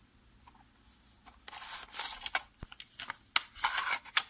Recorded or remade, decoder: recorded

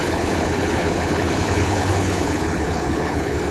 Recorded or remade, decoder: remade, codec, HILCodec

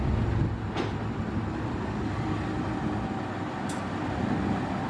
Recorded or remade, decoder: recorded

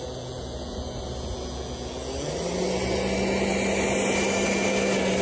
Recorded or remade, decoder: recorded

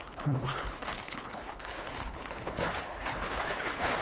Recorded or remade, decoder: remade, codec, HILCodec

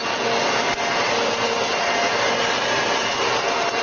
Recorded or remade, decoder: recorded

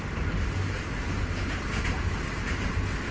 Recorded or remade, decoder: recorded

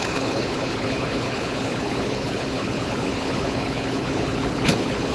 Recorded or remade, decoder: remade, codec, HILCodec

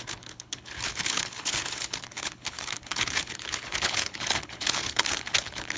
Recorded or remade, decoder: remade, codec, HILCodec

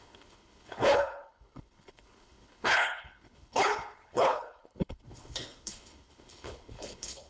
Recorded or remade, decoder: remade, codec, HILCodec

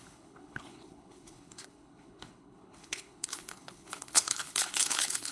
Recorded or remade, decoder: remade, codec, HILCodec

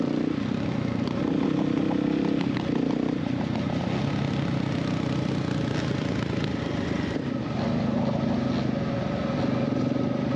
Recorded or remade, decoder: recorded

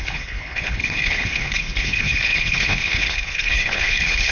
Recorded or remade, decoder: remade, codec, HILCodec